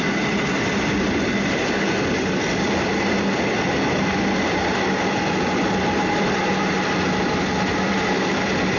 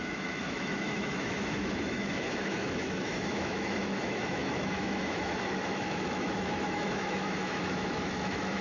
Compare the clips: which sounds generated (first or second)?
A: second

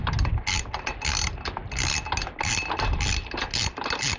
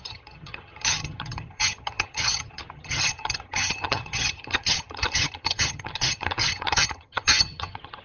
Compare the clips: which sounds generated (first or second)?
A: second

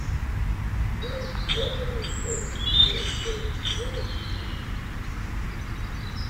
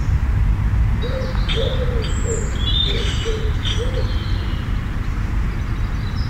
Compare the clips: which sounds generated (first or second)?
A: second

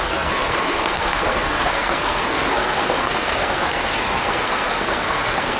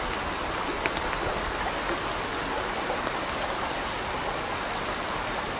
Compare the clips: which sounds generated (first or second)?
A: first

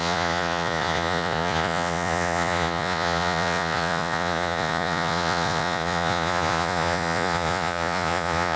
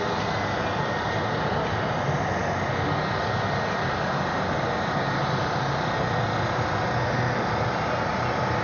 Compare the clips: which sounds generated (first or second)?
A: first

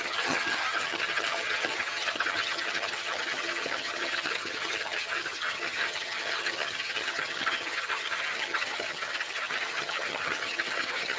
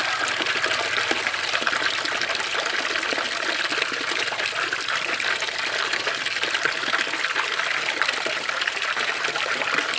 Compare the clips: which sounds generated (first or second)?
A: first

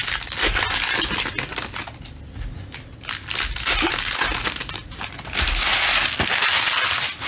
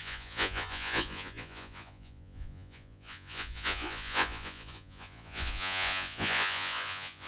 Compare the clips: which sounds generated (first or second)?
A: second